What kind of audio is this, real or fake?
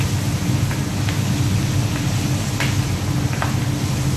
real